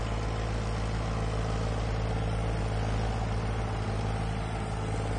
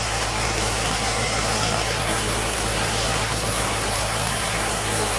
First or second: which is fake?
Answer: second